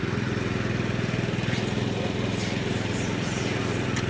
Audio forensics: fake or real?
real